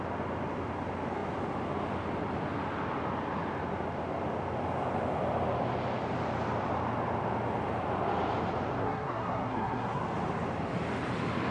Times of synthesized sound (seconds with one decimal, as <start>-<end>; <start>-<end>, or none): 8.8-10.0